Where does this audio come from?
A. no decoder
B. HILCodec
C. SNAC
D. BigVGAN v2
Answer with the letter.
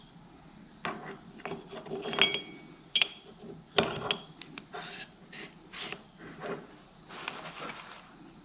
A